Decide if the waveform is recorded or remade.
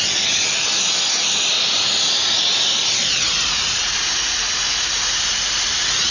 recorded